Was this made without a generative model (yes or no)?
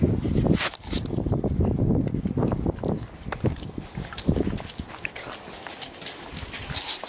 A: yes